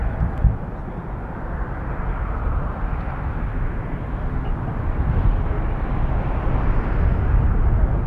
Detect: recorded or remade recorded